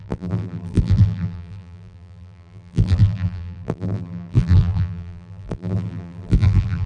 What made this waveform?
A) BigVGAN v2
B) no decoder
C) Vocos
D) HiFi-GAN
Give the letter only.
A